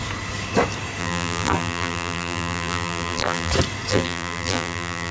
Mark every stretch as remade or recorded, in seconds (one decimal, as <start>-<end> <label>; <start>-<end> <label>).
0.0-1.0 recorded; 1.0-3.5 remade; 3.5-3.9 recorded; 3.9-5.1 remade